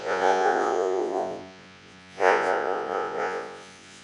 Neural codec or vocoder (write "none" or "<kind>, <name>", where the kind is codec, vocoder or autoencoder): vocoder, Vocos